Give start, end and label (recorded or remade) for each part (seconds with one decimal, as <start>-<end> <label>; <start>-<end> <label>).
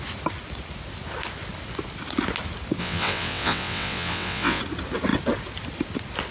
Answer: 0.0-2.8 recorded; 2.8-4.6 remade; 4.6-6.3 recorded